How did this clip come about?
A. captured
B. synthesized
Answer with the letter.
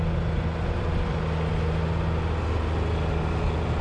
A